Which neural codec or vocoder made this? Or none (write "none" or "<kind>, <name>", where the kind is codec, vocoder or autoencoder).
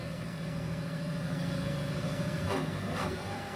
codec, SNAC